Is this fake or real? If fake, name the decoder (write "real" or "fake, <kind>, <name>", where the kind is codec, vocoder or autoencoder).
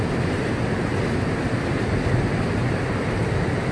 real